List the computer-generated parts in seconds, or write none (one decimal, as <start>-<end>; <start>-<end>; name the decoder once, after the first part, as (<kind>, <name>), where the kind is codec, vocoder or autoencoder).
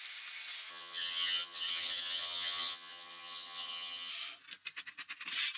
0.7-4.1 (vocoder, HiFi-GAN)